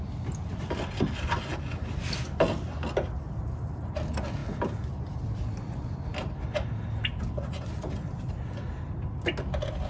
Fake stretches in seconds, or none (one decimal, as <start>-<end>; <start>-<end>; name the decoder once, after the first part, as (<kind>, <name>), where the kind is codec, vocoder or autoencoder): none